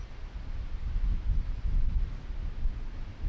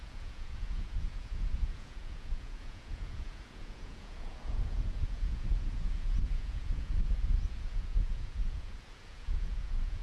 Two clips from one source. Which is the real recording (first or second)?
first